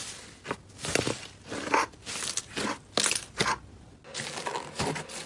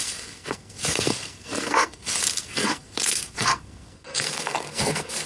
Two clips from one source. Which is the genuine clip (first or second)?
first